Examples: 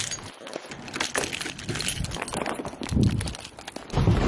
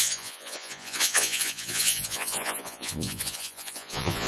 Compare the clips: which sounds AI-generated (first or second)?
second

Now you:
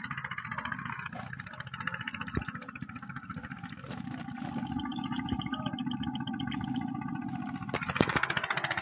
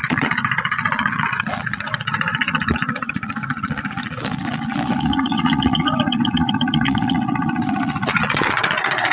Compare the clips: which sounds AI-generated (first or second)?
second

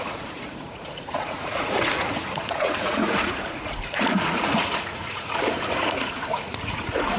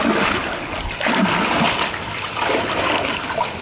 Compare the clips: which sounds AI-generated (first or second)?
first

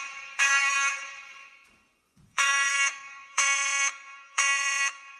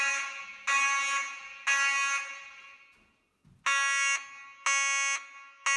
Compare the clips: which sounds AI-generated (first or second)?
first